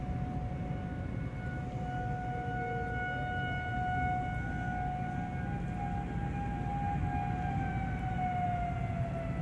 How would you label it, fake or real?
real